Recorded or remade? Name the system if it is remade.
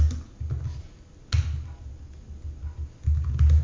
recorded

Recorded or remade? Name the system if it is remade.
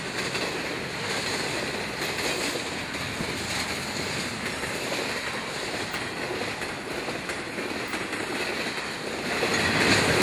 recorded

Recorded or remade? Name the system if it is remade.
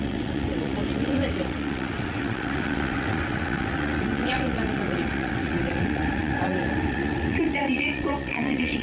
remade, vocoder, WaveNeXt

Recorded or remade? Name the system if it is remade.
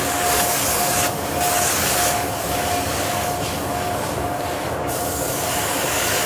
remade, codec, DAC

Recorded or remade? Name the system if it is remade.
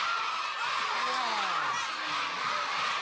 recorded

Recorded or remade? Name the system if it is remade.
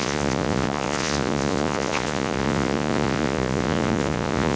remade, vocoder, Vocos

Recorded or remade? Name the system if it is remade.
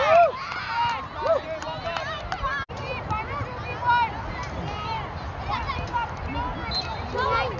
recorded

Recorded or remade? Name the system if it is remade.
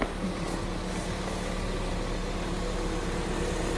recorded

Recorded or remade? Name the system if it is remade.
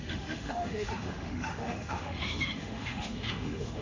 remade, autoencoder, DAC-VAE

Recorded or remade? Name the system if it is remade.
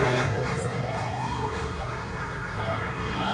remade, codec, SNAC